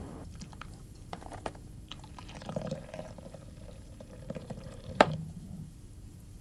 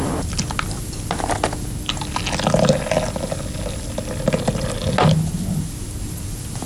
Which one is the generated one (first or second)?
first